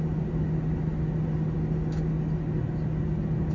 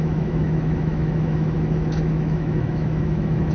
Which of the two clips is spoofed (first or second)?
second